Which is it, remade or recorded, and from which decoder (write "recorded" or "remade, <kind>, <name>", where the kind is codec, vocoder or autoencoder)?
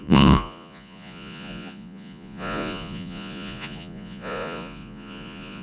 remade, vocoder, Vocos